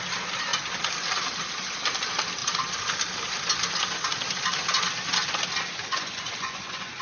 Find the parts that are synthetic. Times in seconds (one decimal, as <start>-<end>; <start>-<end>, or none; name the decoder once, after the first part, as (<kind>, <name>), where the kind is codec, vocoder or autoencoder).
5.9-7.0 (vocoder, Vocos)